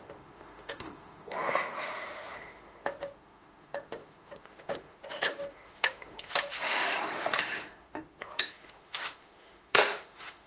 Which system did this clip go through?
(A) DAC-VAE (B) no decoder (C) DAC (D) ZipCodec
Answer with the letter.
A